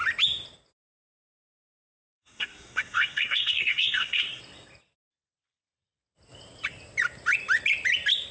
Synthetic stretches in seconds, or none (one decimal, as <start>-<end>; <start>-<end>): 2.1-4.4